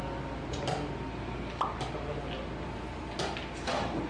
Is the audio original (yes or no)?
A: yes